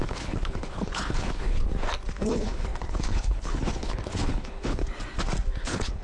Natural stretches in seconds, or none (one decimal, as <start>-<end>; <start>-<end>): 1.7-2.2; 4.8-5.6